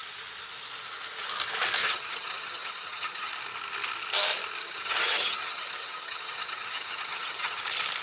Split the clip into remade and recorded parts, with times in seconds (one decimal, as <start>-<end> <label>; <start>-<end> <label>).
0.0-1.8 recorded; 1.8-3.3 remade; 3.3-4.6 recorded; 4.6-7.6 remade; 7.6-8.0 recorded